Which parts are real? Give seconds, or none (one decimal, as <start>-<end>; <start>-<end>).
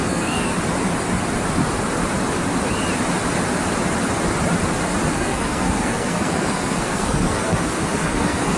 0.5-5.1